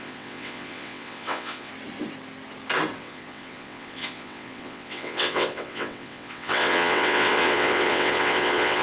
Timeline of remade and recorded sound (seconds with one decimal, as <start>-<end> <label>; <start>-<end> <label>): 0.0-1.7 remade; 1.7-3.0 recorded; 3.0-8.8 remade